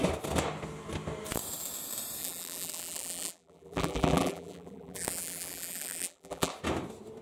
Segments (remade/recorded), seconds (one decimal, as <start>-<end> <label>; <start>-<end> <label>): 0.0-2.2 recorded; 2.2-6.5 remade; 6.5-7.2 recorded